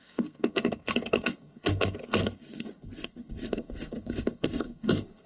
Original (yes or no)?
no